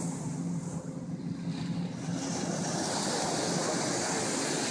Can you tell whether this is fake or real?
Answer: real